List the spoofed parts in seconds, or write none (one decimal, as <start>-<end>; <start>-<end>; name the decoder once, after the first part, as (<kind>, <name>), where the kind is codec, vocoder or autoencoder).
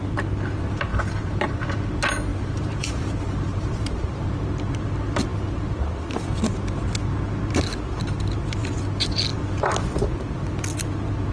0.9-1.6 (vocoder, BigVGAN v2); 2.3-4.3